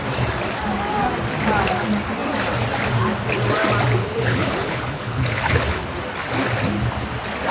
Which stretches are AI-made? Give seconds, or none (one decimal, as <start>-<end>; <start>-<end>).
4.0-5.8